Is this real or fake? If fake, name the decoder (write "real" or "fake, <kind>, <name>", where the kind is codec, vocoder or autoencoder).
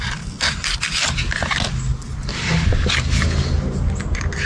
real